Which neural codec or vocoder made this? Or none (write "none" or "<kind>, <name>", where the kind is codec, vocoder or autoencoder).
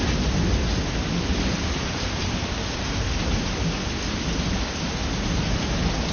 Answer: none